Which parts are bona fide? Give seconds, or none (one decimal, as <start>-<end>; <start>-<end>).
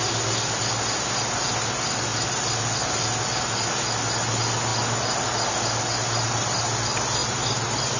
0.0-8.0